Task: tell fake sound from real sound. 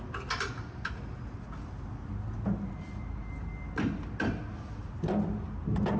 real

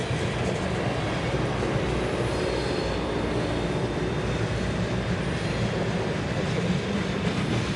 real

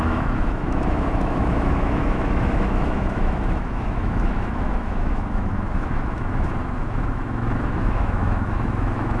fake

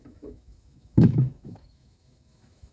fake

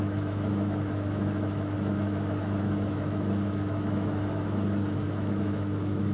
fake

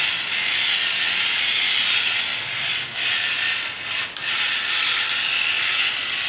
real